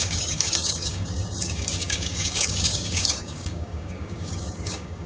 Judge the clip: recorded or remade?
remade